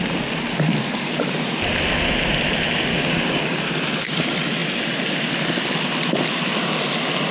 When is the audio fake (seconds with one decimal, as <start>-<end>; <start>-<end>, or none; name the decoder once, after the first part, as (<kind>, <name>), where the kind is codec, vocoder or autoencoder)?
2.9-3.6 (codec, DAC)